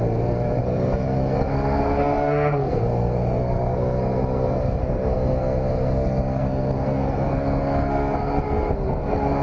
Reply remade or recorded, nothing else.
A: remade